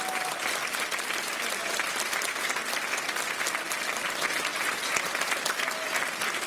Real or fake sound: real